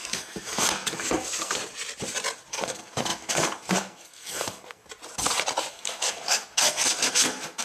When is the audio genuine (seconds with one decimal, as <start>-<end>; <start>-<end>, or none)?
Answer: 1.6-2.5; 4.8-5.7